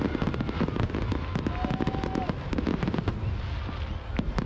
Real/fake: real